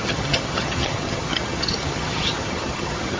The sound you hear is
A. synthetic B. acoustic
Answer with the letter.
A